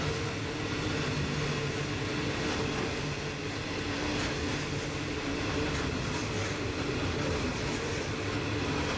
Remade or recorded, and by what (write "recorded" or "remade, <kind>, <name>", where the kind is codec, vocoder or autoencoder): recorded